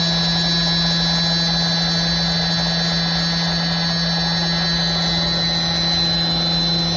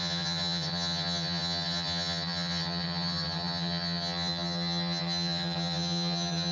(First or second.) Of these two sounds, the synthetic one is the second